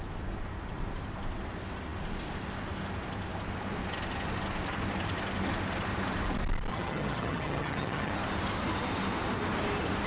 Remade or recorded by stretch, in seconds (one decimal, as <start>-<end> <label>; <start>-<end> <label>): 0.0-6.7 recorded; 6.7-8.1 remade; 8.1-10.1 recorded